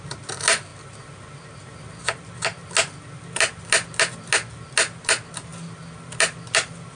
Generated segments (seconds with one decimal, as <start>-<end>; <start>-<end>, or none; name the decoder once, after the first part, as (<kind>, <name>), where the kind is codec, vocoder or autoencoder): none